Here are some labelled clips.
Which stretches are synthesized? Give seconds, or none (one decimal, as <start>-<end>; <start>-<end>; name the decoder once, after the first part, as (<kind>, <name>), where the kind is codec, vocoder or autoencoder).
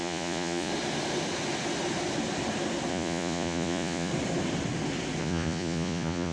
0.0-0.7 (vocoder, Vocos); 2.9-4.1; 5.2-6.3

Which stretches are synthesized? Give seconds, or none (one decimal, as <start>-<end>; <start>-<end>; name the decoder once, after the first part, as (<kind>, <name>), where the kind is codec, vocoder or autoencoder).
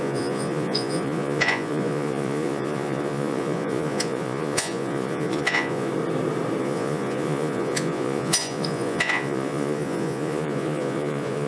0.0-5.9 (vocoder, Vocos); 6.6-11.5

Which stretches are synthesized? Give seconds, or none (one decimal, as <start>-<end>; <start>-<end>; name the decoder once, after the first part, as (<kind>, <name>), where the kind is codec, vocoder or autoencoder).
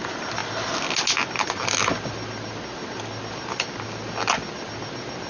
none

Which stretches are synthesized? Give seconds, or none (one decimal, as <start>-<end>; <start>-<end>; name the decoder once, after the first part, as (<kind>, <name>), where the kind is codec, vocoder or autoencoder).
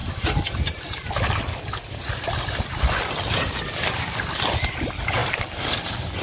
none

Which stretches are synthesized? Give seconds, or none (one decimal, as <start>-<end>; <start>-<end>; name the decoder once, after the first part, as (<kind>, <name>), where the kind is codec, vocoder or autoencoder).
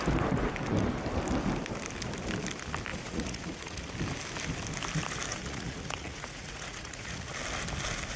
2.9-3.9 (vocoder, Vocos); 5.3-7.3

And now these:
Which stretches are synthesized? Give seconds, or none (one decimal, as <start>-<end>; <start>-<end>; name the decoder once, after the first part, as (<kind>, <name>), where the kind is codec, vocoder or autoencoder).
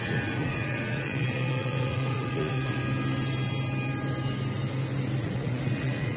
0.0-2.8 (vocoder, Vocos); 5.2-6.2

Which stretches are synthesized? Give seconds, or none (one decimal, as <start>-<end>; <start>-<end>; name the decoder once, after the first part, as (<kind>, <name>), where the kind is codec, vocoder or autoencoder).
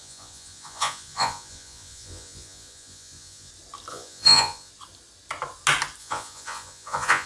0.0-3.5 (vocoder, Vocos); 3.9-4.7; 6.0-7.3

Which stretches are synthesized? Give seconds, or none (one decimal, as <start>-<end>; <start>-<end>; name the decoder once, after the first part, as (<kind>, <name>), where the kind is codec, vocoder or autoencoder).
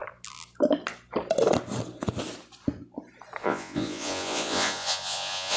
3.4-5.6 (vocoder, Vocos)